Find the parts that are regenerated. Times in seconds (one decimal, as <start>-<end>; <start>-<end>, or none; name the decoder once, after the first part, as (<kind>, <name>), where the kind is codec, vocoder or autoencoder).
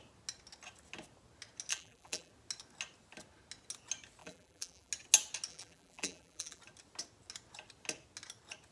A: 1.7-2.3 (vocoder, BigVGAN v2); 4.2-4.9; 5.5-6.6